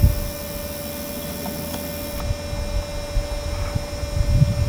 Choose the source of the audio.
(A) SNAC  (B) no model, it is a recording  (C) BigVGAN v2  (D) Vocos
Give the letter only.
B